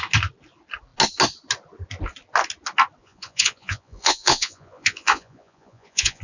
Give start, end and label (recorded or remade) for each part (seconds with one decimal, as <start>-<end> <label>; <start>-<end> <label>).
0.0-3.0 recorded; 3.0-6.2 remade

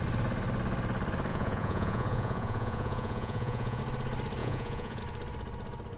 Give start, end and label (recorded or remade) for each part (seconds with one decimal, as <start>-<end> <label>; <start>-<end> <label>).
0.0-1.3 recorded; 1.3-3.8 remade; 3.8-4.4 recorded; 4.4-5.0 remade; 5.0-6.0 recorded

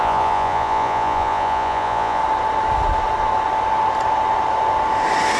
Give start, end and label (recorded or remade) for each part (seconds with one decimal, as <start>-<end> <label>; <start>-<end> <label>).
0.0-2.2 remade; 2.2-5.4 recorded

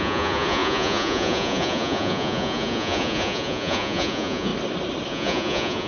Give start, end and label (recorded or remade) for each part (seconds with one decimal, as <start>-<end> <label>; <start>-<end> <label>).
0.0-4.5 remade; 4.5-5.1 recorded; 5.1-5.9 remade

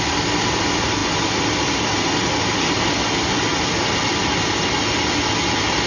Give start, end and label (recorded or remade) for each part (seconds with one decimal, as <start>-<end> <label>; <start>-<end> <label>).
0.0-5.9 recorded